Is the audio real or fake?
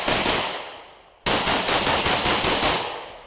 real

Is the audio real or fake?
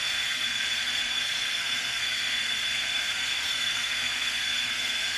fake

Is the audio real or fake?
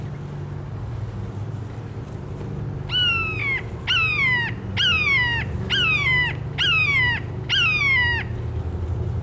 real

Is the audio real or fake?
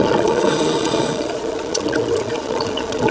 fake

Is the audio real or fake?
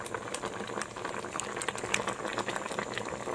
real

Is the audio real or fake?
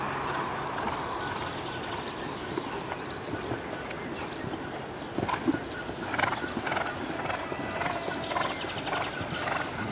real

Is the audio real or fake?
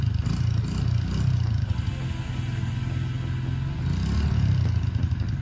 real